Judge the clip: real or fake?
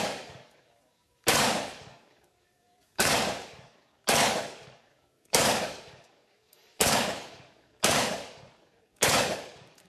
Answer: fake